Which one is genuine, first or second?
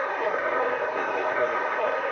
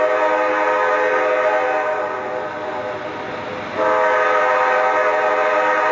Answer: second